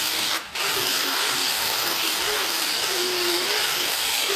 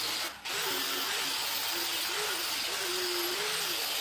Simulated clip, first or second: first